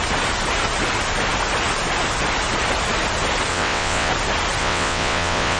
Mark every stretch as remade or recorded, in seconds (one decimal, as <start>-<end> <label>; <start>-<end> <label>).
0.0-3.5 recorded; 3.5-4.1 remade; 4.1-4.6 recorded; 4.6-5.6 remade